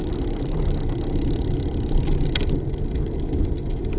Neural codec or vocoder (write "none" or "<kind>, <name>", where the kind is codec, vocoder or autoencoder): none